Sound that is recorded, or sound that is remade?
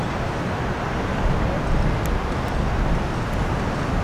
recorded